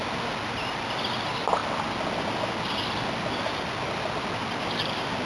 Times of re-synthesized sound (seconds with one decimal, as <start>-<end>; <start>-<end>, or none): none